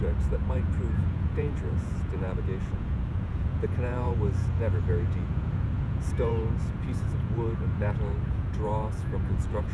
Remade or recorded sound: remade